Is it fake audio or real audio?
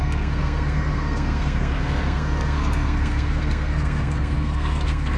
fake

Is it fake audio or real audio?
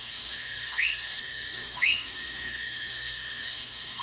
fake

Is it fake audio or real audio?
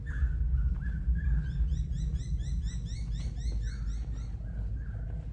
real